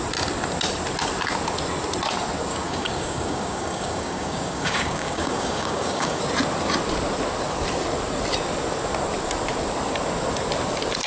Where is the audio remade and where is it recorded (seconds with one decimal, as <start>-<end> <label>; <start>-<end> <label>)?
0.0-2.5 recorded; 2.5-6.2 remade; 6.2-11.1 recorded